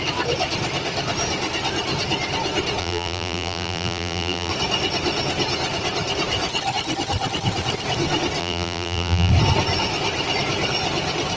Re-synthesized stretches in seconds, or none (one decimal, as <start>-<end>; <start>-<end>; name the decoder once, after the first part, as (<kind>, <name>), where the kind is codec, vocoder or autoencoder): 2.8-4.5 (vocoder, BigVGAN v2); 8.4-9.3